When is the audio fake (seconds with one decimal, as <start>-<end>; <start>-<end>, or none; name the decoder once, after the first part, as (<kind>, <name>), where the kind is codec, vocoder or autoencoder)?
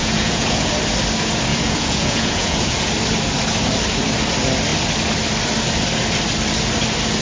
0.0-0.7 (vocoder, Vocos); 1.5-2.9